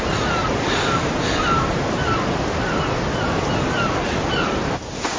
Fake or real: real